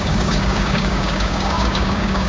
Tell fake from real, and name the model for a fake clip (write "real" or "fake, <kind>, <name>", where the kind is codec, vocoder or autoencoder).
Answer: fake, codec, DAC